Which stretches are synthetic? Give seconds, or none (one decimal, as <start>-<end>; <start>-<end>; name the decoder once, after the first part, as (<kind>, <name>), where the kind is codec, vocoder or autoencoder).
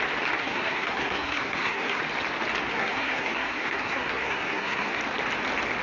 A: 0.4-2.0 (codec, SNAC); 2.7-5.0